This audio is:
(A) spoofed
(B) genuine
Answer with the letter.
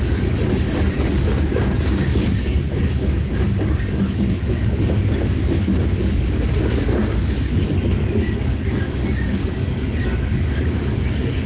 A